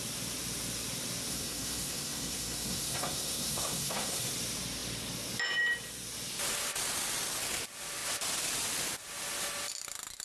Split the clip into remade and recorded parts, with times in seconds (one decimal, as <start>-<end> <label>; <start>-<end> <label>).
0.0-1.3 recorded; 1.3-4.3 remade; 4.3-10.2 recorded